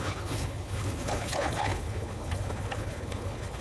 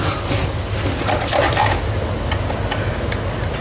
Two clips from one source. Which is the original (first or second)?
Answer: second